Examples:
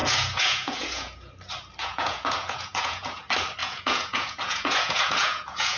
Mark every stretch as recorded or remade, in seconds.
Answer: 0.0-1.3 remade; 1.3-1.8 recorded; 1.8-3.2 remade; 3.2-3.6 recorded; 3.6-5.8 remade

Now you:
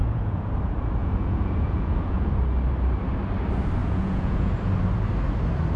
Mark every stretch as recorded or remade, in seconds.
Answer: 0.0-0.5 remade; 0.5-1.0 recorded; 1.0-2.3 remade; 2.3-3.8 recorded; 3.8-4.5 remade; 4.5-5.8 recorded

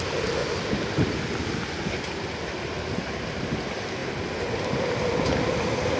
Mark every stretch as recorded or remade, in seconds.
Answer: 0.0-0.4 recorded; 0.4-3.6 remade; 3.6-4.0 recorded; 4.0-6.0 remade